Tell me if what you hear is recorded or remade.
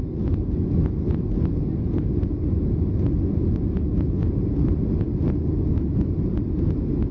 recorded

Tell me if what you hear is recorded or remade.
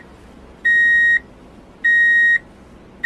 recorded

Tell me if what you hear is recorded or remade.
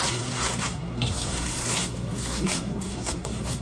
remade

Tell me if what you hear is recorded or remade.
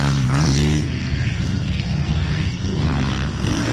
remade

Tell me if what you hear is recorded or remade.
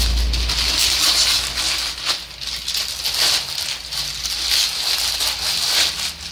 recorded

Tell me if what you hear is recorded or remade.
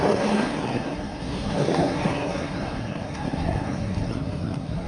remade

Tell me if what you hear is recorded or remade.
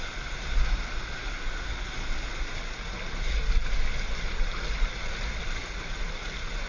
recorded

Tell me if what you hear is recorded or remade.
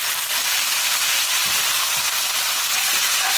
recorded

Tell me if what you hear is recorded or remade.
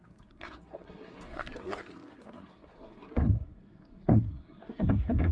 remade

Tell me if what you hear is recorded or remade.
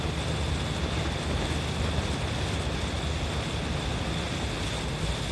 recorded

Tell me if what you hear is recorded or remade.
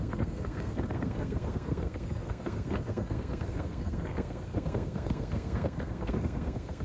remade